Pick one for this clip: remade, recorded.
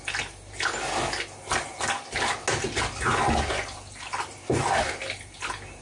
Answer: recorded